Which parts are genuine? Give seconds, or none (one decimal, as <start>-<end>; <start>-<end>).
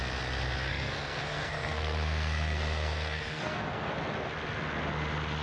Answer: 0.0-0.7; 3.9-5.4